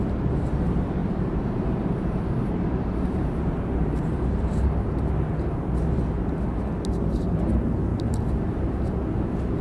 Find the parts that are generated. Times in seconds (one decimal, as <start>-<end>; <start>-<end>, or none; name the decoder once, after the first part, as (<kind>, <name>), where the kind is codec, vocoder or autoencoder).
1.0-5.1 (vocoder, BigVGAN v2); 7.9-8.9